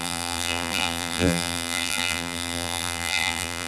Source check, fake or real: fake